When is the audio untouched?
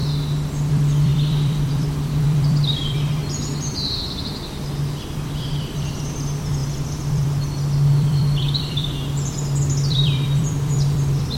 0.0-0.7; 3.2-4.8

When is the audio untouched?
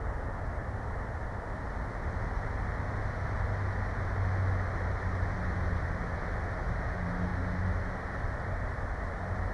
0.0-9.5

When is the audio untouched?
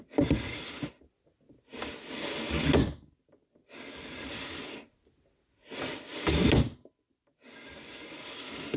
0.0-8.8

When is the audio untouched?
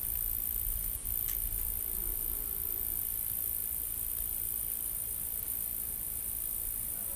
0.0-7.2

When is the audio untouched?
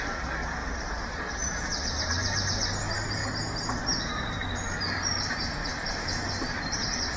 0.0-0.6; 1.6-5.6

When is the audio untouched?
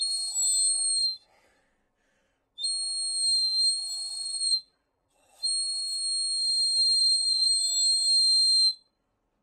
0.0-4.1; 5.4-7.0; 7.6-9.4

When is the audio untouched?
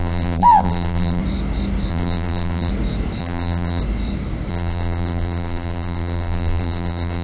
1.2-1.9; 2.7-3.2; 3.8-4.5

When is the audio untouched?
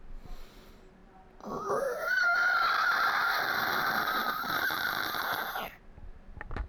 0.0-6.7